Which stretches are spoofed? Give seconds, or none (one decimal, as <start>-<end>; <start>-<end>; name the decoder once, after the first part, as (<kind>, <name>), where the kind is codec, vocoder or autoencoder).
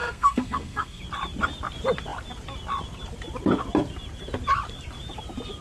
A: 0.0-1.0 (codec, SNAC)